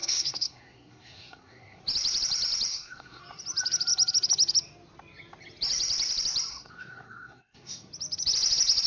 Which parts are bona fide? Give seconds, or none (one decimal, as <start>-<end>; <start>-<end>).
1.8-2.7; 3.2-6.5; 7.9-8.9